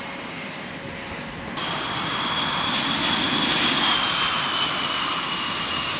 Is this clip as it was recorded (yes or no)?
yes